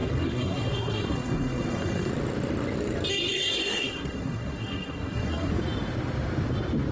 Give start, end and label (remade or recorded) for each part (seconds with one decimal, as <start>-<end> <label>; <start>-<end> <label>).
0.0-2.1 remade; 2.1-3.3 recorded; 3.3-5.5 remade; 5.5-6.9 recorded